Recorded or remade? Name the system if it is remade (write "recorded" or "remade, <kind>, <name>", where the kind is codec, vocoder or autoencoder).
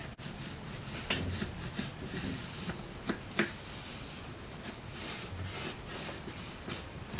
recorded